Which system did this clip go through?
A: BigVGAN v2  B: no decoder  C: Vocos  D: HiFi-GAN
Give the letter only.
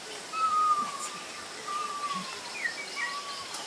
A